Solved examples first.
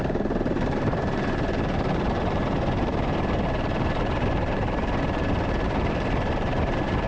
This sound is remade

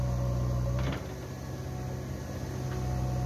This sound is recorded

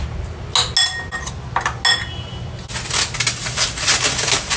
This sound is recorded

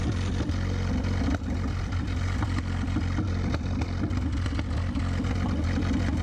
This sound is recorded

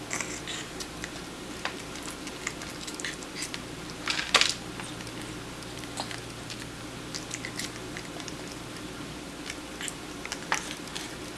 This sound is recorded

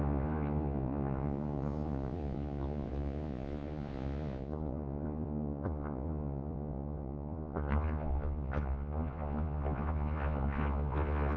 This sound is remade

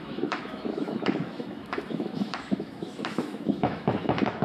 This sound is remade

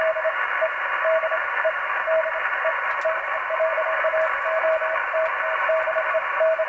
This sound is recorded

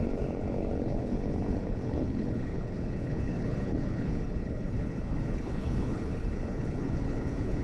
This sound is remade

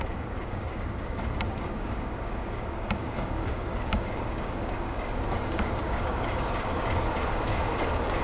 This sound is remade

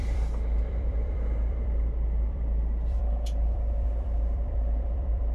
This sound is remade